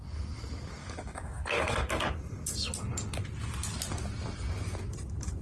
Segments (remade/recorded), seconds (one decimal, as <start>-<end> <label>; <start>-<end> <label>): 0.0-0.8 recorded; 0.8-2.1 remade; 2.1-5.4 recorded